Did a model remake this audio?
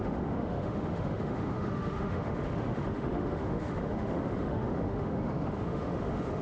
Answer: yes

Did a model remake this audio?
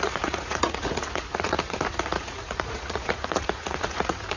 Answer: yes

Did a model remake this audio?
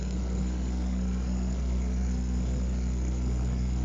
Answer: yes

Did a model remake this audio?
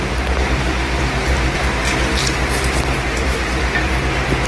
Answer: no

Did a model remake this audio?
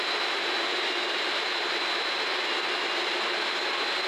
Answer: yes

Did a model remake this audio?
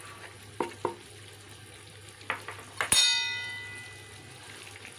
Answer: no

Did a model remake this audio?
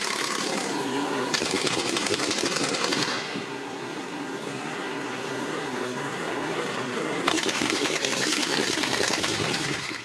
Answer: yes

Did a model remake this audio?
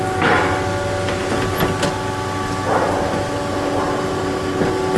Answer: no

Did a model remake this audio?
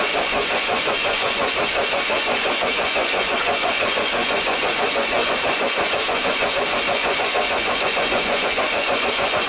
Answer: yes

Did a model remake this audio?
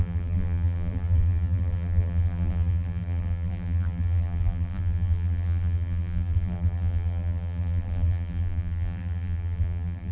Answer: yes